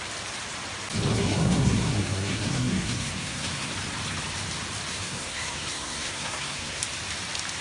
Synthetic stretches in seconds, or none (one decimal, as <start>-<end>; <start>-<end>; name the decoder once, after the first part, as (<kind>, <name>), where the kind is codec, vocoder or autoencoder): 1.1-3.7 (codec, SNAC); 4.9-6.8